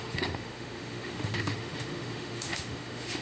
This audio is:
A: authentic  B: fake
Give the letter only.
B